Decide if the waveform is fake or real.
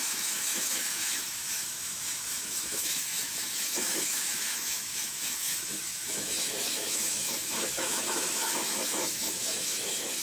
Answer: fake